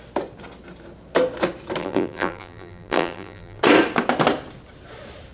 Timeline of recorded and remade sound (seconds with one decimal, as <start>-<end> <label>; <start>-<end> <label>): 0.0-1.8 recorded; 1.8-3.6 remade; 3.6-5.3 recorded